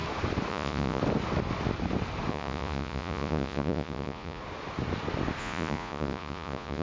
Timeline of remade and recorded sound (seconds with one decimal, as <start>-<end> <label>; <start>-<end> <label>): 0.0-0.5 recorded; 0.5-1.0 remade; 1.0-2.3 recorded; 2.3-4.4 remade; 4.4-5.4 recorded; 5.4-6.8 remade